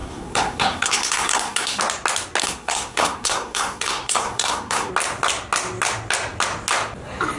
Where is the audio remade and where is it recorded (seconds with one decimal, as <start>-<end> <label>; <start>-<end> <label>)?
0.0-1.8 remade; 1.8-2.4 recorded; 2.4-4.9 remade; 4.9-7.4 recorded